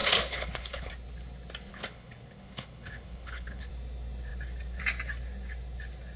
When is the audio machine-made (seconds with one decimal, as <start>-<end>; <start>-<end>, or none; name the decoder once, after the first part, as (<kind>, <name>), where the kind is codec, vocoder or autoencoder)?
0.0-0.9 (codec, HILCodec); 1.7-3.7